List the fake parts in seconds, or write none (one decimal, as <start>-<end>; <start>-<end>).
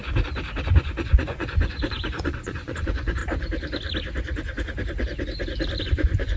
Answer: 0.7-3.2; 5.8-6.4